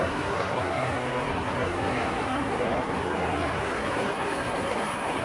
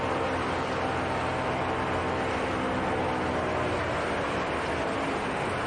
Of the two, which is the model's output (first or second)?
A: first